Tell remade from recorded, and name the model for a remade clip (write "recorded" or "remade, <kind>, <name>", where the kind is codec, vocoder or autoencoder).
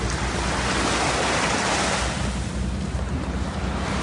recorded